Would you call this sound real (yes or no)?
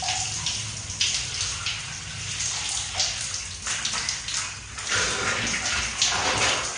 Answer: yes